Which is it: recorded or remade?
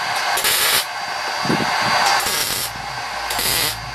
recorded